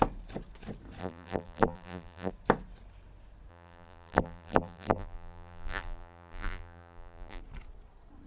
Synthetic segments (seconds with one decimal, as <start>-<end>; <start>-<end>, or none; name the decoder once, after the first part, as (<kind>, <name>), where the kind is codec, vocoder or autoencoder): 1.0-2.3 (vocoder, BigVGAN v2); 3.5-7.4